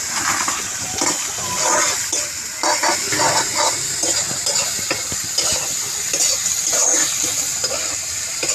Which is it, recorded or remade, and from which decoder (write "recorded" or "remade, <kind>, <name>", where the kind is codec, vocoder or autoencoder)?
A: recorded